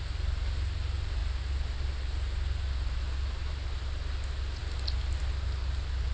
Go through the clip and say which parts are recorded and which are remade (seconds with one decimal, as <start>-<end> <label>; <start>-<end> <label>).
0.0-6.1 recorded